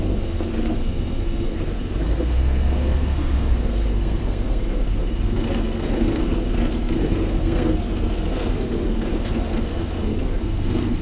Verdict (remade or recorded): remade